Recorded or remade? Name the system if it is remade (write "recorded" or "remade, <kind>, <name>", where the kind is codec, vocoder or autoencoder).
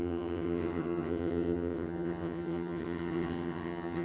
remade, vocoder, HiFi-GAN